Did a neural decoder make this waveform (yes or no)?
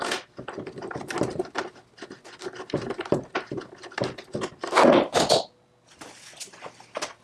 no